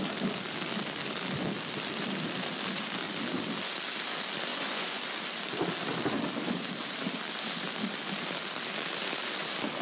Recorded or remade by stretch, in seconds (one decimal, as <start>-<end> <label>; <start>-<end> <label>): 0.0-4.5 recorded; 4.5-5.0 remade; 5.0-9.8 recorded